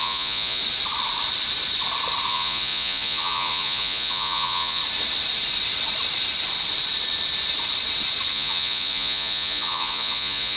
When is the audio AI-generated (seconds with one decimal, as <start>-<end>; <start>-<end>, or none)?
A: 0.0-0.6; 2.3-4.8; 8.3-10.6